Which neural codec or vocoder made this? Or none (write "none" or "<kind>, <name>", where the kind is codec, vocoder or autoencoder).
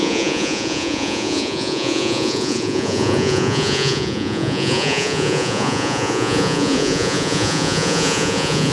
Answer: vocoder, Vocos